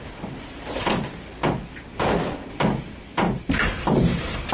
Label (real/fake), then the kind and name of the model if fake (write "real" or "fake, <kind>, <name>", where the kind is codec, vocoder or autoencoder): real